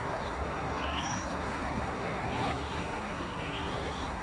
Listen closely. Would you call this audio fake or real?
fake